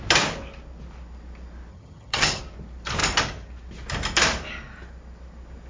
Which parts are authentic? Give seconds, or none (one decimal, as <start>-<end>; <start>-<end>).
0.0-1.7; 2.4-5.7